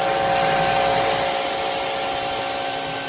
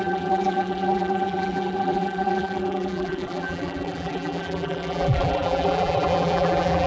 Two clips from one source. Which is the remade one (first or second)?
second